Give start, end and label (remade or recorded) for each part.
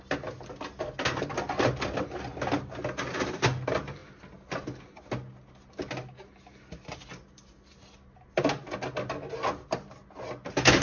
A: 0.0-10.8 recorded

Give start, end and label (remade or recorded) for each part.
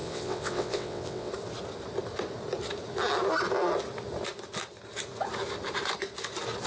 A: 0.0-1.3 remade; 1.3-6.7 recorded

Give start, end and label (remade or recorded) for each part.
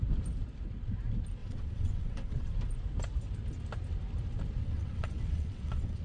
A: 0.0-1.4 recorded; 1.4-2.5 remade; 2.5-4.6 recorded; 4.6-6.0 remade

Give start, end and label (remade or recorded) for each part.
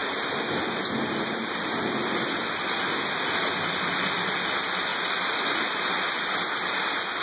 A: 0.0-7.2 recorded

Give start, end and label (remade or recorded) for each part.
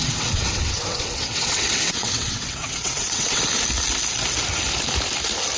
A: 0.0-3.4 remade; 3.4-5.6 recorded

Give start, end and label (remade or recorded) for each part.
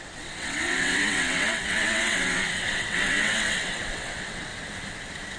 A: 0.0-4.5 remade; 4.5-5.4 recorded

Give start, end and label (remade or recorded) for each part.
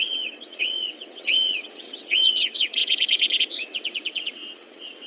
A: 0.0-5.1 remade